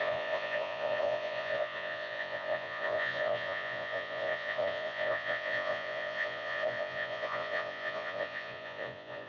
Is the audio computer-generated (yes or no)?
yes